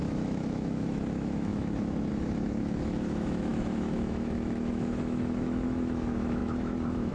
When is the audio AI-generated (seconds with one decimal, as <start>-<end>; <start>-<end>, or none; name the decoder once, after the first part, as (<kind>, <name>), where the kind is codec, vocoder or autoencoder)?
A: 0.0-7.1 (autoencoder, DAC-VAE)